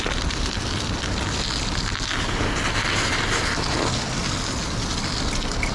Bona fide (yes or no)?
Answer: yes